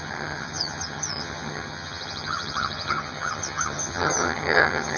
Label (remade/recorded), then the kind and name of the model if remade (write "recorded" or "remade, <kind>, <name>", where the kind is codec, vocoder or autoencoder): remade, vocoder, HiFi-GAN